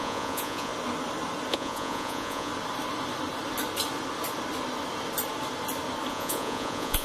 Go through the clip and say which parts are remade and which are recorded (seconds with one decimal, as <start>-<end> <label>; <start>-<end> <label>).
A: 0.0-0.7 remade; 0.7-1.5 recorded; 1.5-2.5 remade; 2.5-6.1 recorded; 6.1-7.0 remade